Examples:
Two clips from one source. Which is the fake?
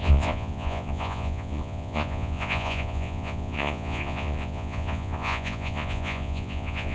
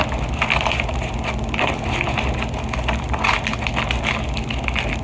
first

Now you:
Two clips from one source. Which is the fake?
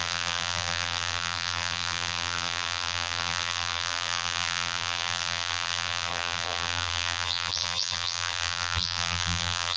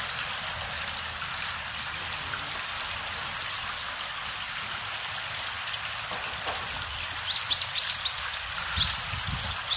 first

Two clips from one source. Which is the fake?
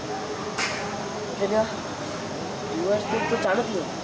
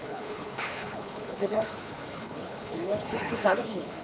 second